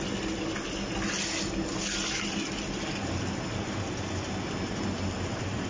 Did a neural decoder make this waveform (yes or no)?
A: no